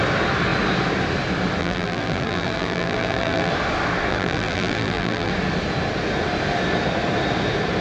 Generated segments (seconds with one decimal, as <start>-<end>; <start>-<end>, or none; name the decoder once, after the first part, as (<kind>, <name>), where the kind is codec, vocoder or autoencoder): 1.6-3.5 (vocoder, BigVGAN v2); 4.1-5.3